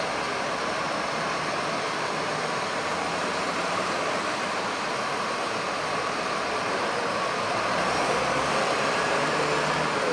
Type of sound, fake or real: fake